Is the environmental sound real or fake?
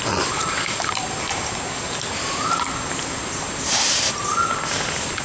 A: real